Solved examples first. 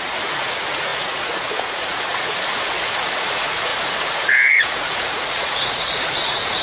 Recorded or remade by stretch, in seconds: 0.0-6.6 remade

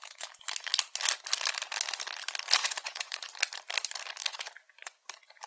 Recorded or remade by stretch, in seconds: 0.0-2.6 recorded; 2.6-3.3 remade; 3.3-4.2 recorded; 4.2-5.1 remade; 5.1-5.5 recorded

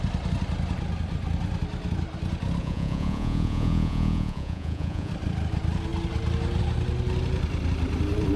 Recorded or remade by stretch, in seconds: 0.0-2.6 recorded; 2.6-5.1 remade; 5.1-8.4 recorded